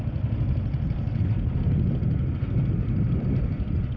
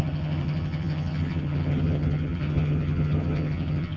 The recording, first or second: first